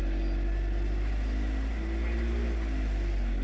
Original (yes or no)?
yes